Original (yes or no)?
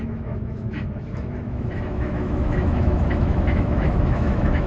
no